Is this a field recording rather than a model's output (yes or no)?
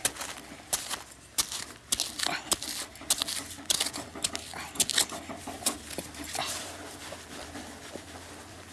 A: yes